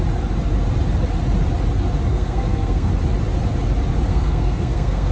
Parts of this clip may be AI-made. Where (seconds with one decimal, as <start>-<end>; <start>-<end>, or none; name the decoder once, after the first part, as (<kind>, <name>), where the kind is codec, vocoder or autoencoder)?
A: 2.1-2.9 (codec, SNAC); 4.1-5.1